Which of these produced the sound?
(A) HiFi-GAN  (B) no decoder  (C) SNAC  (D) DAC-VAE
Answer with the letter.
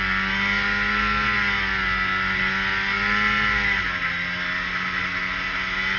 B